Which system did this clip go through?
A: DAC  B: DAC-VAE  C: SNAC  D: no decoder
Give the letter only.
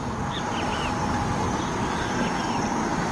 D